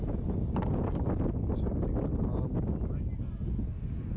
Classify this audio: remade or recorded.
recorded